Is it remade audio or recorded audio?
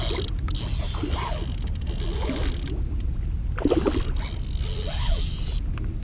recorded